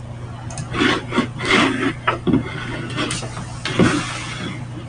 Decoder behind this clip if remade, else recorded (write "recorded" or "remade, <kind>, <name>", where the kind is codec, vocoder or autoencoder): recorded